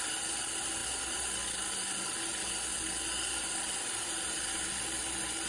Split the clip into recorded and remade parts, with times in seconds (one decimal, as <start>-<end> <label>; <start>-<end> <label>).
0.0-5.5 recorded